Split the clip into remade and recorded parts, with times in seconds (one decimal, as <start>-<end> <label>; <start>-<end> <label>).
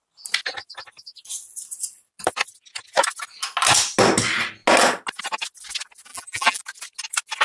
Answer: 0.0-6.1 recorded; 6.1-6.6 remade; 6.6-7.4 recorded